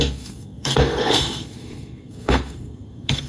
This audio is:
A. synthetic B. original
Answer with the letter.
A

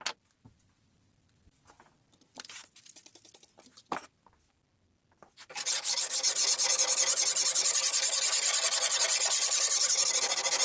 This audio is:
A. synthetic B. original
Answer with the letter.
B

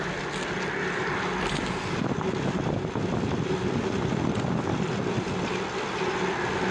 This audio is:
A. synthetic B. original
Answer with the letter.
B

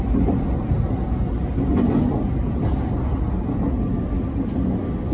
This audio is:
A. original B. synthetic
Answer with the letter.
A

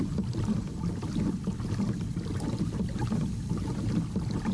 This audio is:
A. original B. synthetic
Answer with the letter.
A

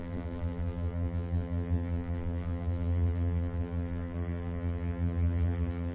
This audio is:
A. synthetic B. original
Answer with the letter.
A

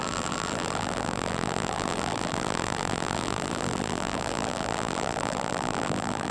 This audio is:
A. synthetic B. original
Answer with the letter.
A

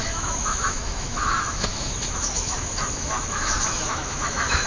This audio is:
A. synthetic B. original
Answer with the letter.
A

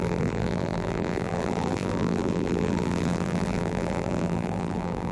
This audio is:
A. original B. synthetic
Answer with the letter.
B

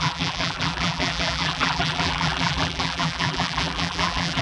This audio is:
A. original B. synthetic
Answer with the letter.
B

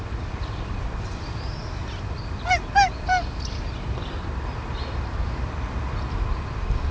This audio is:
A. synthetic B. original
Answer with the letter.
B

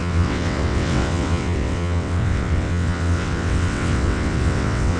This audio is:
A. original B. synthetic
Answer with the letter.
B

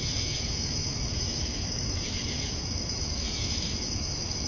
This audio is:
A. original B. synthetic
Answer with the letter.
B